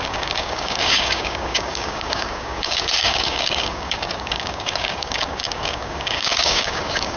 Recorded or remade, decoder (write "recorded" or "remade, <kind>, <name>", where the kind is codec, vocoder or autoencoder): remade, codec, DAC